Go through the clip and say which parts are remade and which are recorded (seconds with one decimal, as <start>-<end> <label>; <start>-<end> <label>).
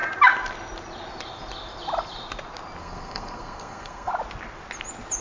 0.0-2.8 recorded; 2.8-4.1 remade; 4.1-5.2 recorded